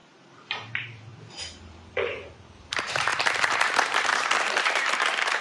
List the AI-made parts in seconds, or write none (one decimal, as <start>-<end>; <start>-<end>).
0.0-5.4